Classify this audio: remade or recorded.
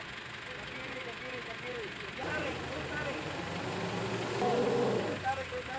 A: recorded